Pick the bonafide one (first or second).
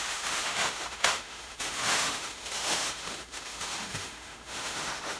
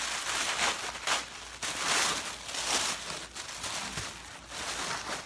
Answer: second